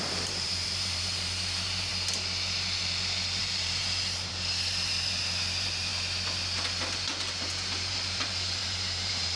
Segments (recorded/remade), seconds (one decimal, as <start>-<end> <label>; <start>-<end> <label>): 0.0-1.9 remade; 1.9-3.4 recorded; 3.4-5.9 remade; 5.9-7.9 recorded; 7.9-9.4 remade